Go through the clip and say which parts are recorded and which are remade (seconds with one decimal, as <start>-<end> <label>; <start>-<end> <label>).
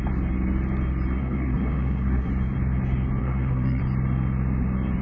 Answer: 0.0-1.2 recorded; 1.2-2.3 remade; 2.3-3.2 recorded; 3.2-3.8 remade; 3.8-5.0 recorded